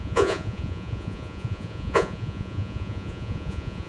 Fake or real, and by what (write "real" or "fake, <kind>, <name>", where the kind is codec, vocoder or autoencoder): fake, vocoder, Vocos